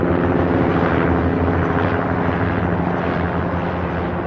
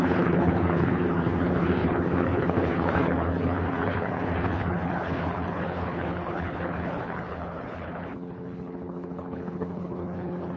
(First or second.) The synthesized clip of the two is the second